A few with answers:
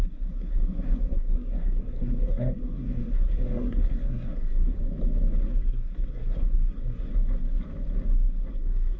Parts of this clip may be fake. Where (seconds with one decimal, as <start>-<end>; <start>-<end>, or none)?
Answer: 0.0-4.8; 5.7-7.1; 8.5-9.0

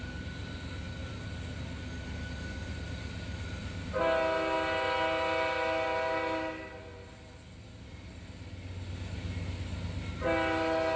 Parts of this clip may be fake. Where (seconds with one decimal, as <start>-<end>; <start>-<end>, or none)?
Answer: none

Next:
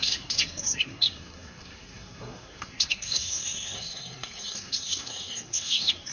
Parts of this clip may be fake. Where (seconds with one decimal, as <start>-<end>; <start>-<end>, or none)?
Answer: 0.0-6.1

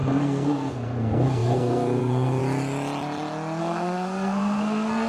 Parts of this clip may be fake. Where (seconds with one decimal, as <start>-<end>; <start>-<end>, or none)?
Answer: 0.0-2.4; 3.6-5.1

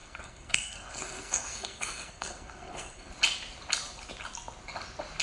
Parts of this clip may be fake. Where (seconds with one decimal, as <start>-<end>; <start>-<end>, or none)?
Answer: 0.0-3.1

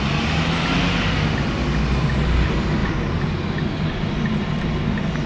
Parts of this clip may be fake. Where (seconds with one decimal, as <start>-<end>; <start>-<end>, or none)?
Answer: none

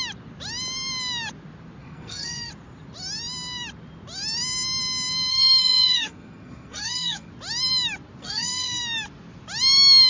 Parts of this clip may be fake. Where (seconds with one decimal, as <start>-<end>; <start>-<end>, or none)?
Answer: 1.8-2.5; 5.3-7.3; 8.2-8.8

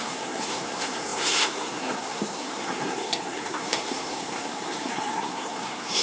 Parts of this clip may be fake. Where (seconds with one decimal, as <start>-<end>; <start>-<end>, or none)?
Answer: 0.0-6.0